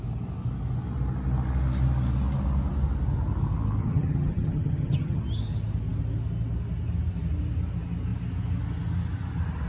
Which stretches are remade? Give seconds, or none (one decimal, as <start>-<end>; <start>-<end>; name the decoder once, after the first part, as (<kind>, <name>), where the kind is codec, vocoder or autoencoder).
3.8-5.2 (vocoder, HiFi-GAN)